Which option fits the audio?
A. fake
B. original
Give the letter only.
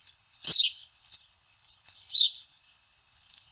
A